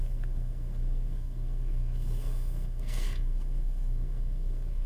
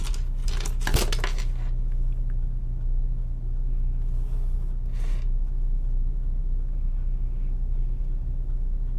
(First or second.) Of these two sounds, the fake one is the first